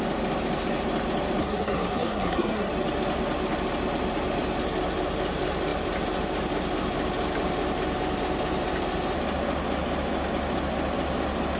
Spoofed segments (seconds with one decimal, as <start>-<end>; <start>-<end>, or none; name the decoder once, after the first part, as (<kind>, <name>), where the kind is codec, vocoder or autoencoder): 1.4-2.7 (codec, SNAC)